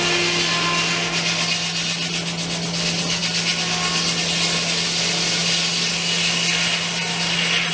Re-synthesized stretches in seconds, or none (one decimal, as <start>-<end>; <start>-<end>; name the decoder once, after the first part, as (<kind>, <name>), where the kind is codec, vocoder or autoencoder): none